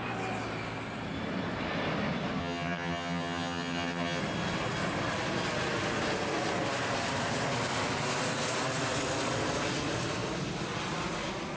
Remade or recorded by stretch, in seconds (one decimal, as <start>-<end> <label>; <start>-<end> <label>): 0.0-2.4 recorded; 2.4-4.2 remade; 4.2-11.6 recorded